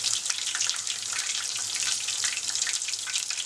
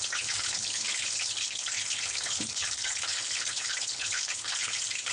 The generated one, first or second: second